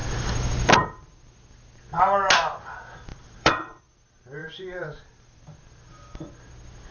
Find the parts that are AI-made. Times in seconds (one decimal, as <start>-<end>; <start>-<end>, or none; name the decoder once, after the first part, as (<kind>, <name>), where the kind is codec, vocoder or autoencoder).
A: 0.0-0.7 (vocoder, BigVGAN v2); 3.1-3.8; 4.4-5.4